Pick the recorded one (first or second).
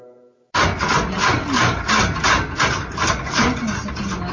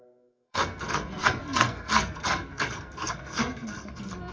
first